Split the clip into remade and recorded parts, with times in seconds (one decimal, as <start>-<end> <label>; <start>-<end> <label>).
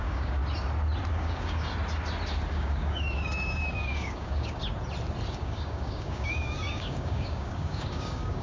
0.0-0.4 remade; 0.4-1.1 recorded; 1.1-1.7 remade; 1.7-2.5 recorded; 2.5-4.6 remade; 4.6-5.3 recorded; 5.3-8.4 remade